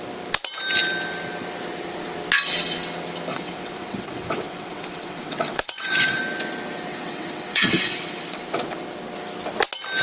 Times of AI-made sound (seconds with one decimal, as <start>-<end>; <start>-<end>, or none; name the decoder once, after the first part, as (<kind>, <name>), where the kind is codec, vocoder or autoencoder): 3.3-6.2 (vocoder, WaveNeXt); 6.9-8.4